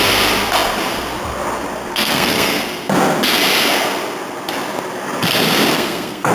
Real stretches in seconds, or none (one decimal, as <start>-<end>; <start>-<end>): 0.0-1.9; 2.6-5.7